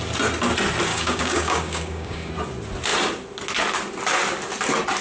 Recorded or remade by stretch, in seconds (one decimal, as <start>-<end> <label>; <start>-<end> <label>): 0.0-0.9 recorded; 0.9-2.3 remade; 2.3-5.0 recorded